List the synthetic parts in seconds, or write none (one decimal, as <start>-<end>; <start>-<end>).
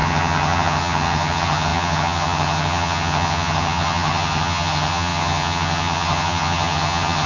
0.0-7.3